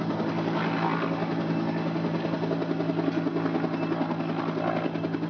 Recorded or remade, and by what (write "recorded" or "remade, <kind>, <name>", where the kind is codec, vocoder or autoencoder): recorded